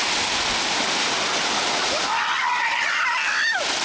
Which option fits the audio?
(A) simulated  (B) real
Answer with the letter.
B